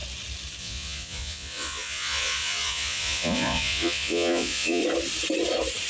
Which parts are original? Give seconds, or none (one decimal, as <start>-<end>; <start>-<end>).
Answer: 0.0-0.6; 4.8-5.9